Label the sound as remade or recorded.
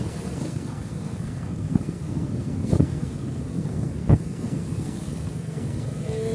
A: remade